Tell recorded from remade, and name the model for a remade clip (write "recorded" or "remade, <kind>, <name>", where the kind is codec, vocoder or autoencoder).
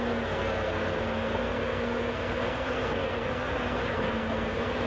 remade, codec, SNAC